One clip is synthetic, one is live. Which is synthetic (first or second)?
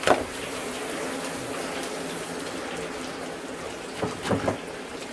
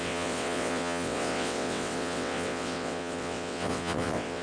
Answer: second